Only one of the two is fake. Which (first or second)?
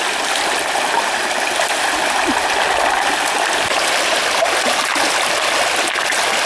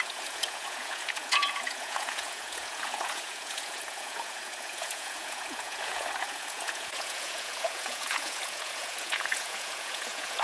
second